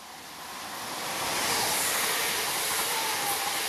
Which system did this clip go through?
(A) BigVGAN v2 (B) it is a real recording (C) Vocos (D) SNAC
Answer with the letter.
B